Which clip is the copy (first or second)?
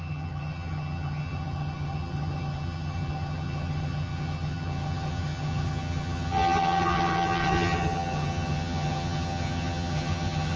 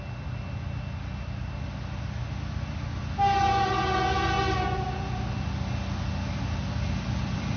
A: first